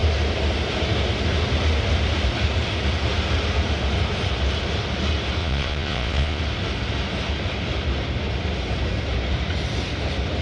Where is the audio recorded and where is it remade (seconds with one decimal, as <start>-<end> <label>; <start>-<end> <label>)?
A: 0.0-5.4 recorded; 5.4-6.4 remade; 6.4-10.4 recorded